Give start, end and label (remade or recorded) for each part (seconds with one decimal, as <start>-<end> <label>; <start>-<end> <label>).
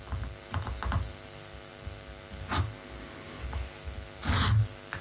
0.0-5.0 recorded